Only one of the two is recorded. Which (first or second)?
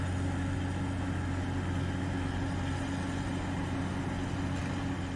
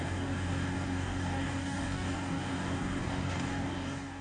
first